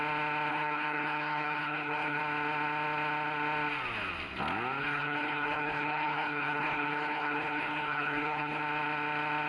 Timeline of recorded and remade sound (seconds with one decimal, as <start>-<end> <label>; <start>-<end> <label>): 0.0-0.5 recorded; 0.5-2.2 remade; 2.2-4.8 recorded; 4.8-8.6 remade; 8.6-9.5 recorded